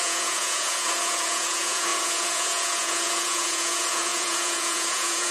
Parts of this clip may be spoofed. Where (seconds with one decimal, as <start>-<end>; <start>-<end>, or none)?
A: 0.0-5.3